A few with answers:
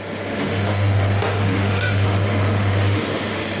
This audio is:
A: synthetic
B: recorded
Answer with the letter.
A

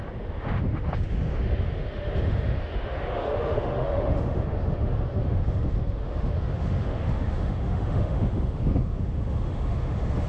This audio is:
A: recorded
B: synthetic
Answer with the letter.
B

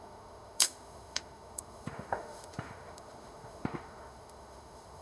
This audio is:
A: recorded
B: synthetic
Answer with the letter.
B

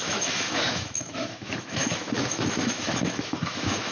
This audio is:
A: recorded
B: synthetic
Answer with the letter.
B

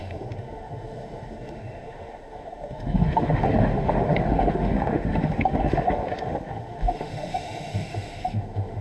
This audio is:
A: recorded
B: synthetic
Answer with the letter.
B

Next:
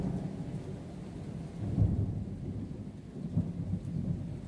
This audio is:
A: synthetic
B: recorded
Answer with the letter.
B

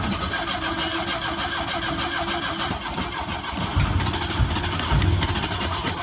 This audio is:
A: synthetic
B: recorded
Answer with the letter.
B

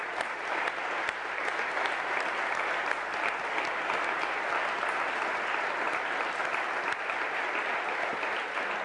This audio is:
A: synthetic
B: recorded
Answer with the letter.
B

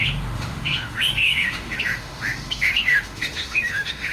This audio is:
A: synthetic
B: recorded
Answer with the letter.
A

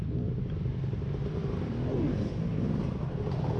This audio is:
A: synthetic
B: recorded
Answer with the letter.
B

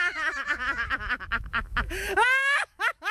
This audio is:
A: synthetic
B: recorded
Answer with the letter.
A